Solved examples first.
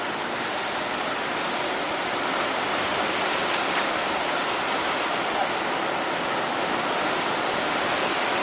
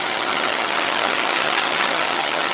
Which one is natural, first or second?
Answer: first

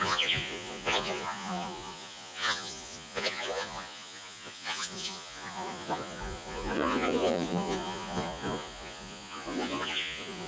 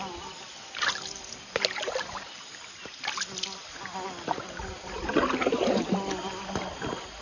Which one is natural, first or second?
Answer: second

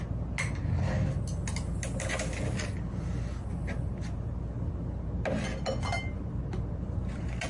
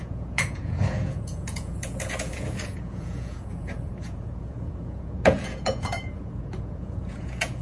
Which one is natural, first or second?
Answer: first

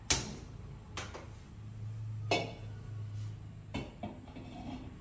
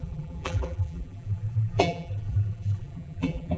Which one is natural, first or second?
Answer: first